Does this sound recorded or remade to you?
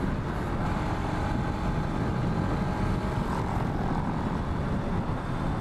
recorded